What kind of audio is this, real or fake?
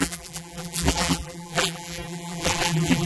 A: fake